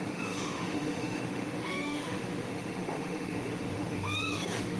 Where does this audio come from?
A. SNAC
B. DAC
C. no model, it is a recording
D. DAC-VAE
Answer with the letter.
D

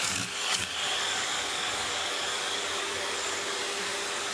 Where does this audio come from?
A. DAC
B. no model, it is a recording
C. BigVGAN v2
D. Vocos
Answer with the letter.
A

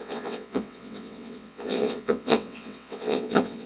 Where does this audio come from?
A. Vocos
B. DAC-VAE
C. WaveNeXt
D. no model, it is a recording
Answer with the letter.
C